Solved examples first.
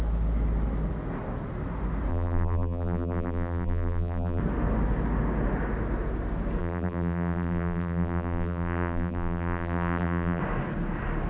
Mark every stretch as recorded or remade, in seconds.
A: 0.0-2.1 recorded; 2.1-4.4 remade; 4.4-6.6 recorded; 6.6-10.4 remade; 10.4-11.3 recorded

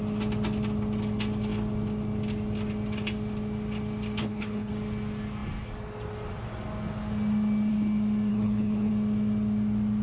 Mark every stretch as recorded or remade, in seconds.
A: 0.0-4.2 recorded; 4.2-4.7 remade; 4.7-8.3 recorded; 8.3-8.9 remade; 8.9-10.0 recorded

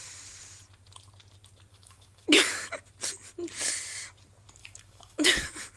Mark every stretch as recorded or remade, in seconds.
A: 0.0-1.7 recorded; 1.7-2.7 remade; 2.7-4.6 recorded; 4.6-5.8 remade

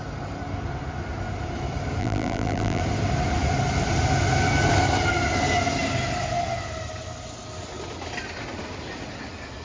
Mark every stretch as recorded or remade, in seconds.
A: 0.0-2.0 recorded; 2.0-2.8 remade; 2.8-9.6 recorded

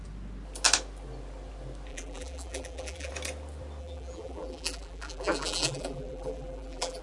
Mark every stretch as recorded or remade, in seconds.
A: 0.0-1.9 recorded; 1.9-3.1 remade; 3.1-3.8 recorded; 3.8-7.0 remade

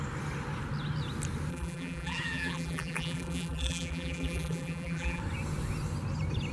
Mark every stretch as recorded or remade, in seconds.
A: 0.0-1.5 recorded; 1.5-5.2 remade; 5.2-6.5 recorded

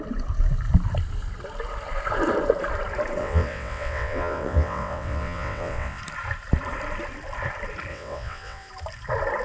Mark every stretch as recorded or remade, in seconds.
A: 0.0-3.2 recorded; 3.2-6.0 remade; 6.0-7.9 recorded; 7.9-8.7 remade; 8.7-9.4 recorded